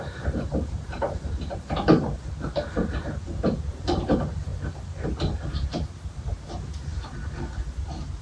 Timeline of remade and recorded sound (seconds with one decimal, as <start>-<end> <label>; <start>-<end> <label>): 0.0-4.5 remade; 4.5-5.5 recorded; 5.5-8.2 remade

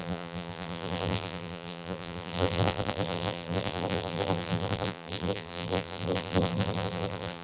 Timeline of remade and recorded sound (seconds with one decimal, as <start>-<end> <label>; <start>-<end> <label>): 0.0-7.4 remade

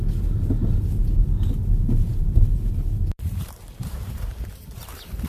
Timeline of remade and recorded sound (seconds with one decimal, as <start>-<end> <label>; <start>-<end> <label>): 0.0-1.6 recorded; 1.6-4.8 remade; 4.8-5.3 recorded

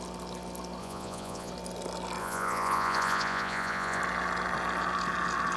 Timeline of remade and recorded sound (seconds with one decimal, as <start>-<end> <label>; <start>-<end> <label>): 0.0-0.8 recorded; 0.8-1.5 remade; 1.5-2.2 recorded; 2.2-4.0 remade; 4.0-5.6 recorded

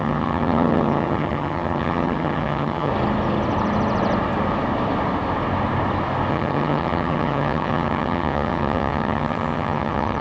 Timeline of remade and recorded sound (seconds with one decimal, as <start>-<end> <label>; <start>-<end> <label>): 0.0-2.9 remade; 2.9-6.3 recorded; 6.3-10.2 remade